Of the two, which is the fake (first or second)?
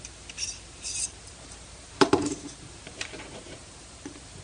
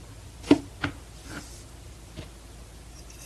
first